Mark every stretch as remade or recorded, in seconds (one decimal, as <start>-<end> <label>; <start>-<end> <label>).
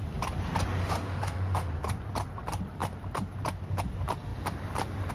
0.0-0.8 recorded; 0.8-1.7 remade; 1.7-5.1 recorded